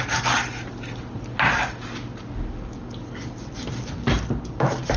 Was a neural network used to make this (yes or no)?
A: no